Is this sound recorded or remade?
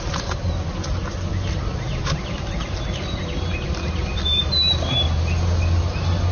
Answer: recorded